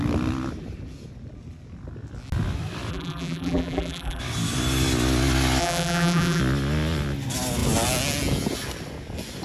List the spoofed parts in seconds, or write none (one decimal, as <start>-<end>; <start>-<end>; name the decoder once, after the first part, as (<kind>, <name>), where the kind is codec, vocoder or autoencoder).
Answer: 2.9-4.2 (vocoder, BigVGAN v2); 5.6-6.4